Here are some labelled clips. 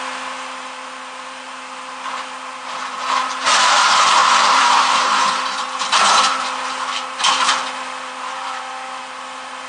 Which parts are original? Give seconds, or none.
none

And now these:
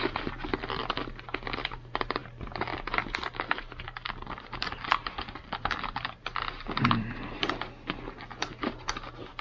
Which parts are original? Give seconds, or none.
0.0-9.4

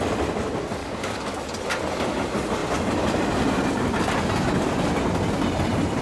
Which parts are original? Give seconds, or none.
0.0-0.8; 1.4-6.0